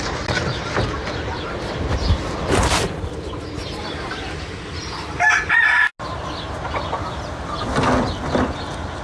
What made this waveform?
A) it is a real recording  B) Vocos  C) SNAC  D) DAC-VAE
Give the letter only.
A